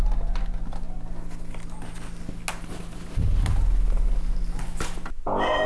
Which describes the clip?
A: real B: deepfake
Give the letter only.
A